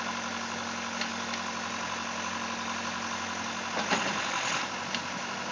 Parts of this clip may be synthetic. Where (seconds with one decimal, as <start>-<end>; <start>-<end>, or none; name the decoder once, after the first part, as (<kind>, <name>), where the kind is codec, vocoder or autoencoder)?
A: none